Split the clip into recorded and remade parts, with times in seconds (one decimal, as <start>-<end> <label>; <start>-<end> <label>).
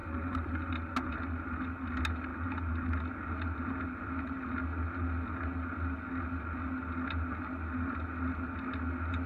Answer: 0.0-0.7 remade; 0.7-9.3 recorded